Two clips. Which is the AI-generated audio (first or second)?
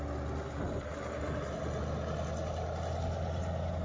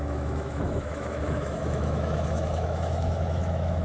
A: second